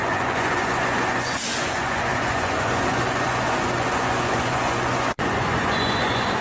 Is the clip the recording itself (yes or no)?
no